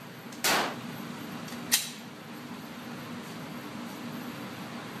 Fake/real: real